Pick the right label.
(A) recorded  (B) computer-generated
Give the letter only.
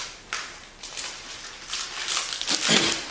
A